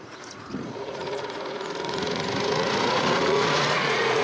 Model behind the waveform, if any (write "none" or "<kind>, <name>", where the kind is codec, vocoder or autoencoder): vocoder, Vocos